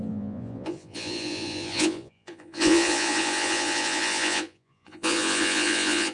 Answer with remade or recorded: remade